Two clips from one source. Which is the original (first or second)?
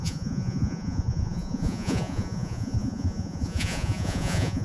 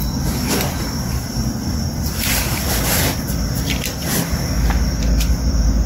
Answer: second